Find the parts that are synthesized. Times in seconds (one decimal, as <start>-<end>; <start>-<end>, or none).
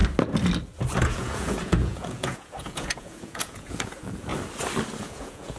1.0-4.3; 5.0-5.6